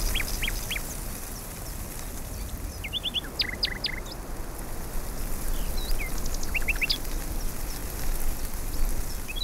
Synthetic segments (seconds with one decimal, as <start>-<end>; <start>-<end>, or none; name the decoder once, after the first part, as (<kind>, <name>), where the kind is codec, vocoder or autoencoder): none